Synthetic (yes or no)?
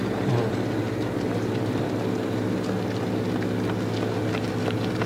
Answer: no